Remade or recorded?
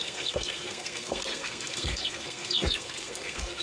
remade